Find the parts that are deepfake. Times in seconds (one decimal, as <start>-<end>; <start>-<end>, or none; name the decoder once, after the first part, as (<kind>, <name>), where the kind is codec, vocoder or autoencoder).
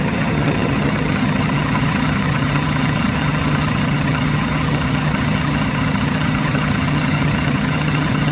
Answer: 0.0-8.3 (vocoder, HiFi-GAN)